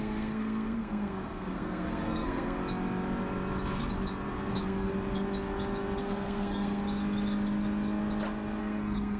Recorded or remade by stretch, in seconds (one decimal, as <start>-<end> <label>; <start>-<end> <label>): 0.0-2.6 remade; 2.6-4.5 recorded; 4.5-4.9 remade; 4.9-6.0 recorded; 6.0-6.8 remade; 6.8-8.6 recorded; 8.6-9.2 remade